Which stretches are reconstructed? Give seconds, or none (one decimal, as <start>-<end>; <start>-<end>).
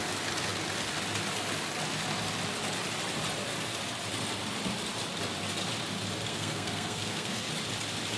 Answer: 6.3-7.5